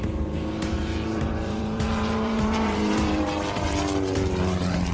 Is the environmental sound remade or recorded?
remade